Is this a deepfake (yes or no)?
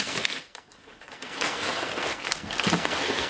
yes